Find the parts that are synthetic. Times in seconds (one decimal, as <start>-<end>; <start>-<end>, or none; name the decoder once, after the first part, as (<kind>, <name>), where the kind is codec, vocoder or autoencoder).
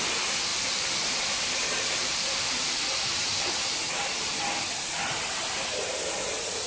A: 0.5-3.9 (vocoder, BigVGAN v2)